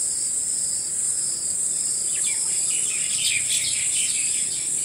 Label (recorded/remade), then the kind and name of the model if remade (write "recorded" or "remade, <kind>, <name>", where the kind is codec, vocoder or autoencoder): remade, vocoder, BigVGAN v2